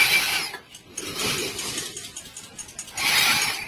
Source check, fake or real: real